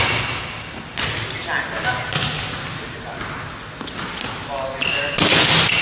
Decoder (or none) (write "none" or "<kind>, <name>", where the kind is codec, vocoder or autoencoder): none